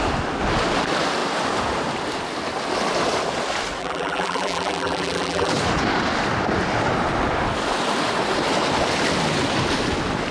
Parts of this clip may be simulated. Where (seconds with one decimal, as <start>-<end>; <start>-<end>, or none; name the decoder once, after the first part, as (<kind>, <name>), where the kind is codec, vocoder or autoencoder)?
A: 3.8-5.5 (vocoder, BigVGAN v2)